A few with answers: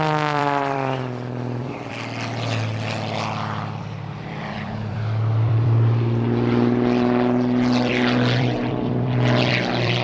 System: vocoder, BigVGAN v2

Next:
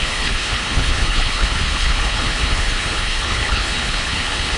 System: codec, HILCodec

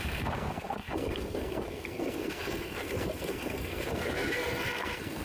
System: codec, SNAC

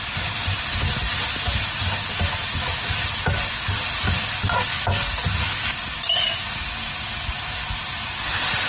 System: none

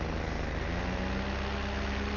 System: none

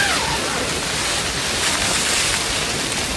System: none